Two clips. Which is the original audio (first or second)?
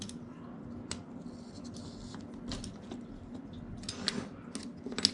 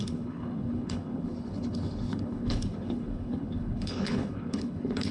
first